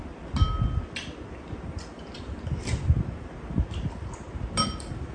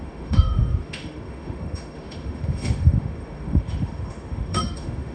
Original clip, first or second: first